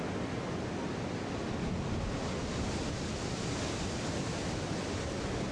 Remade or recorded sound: recorded